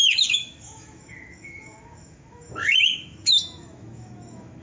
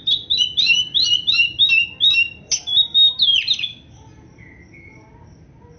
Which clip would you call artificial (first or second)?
first